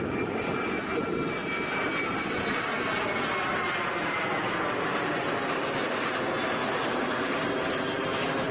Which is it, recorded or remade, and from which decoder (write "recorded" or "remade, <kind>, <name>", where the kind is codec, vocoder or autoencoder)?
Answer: recorded